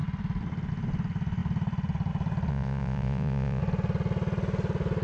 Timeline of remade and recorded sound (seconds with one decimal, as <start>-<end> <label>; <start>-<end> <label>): 0.0-2.5 recorded; 2.5-3.6 remade; 3.6-5.0 recorded